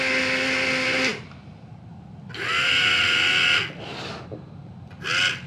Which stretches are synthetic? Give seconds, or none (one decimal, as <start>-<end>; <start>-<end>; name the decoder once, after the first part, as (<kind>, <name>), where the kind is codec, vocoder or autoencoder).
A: none